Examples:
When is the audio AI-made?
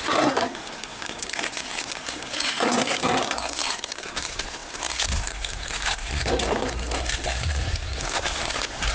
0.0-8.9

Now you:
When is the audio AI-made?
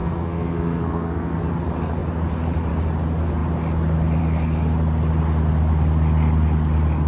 0.0-1.4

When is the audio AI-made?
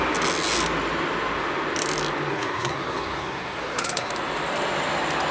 2.3-4.1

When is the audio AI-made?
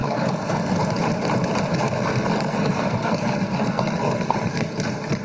0.0-0.8; 1.8-4.7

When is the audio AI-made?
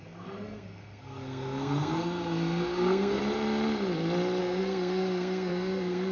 0.0-3.2; 4.4-6.1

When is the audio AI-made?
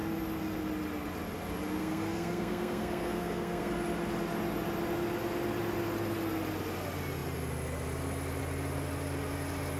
1.8-3.7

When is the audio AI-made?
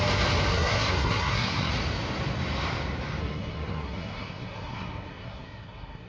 0.5-1.7; 3.2-6.1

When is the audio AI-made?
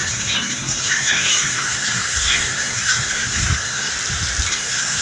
0.0-3.9; 4.5-5.0